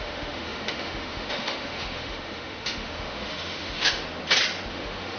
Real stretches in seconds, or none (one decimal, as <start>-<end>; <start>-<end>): 4.0-4.7